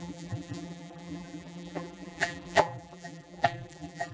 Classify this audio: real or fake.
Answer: fake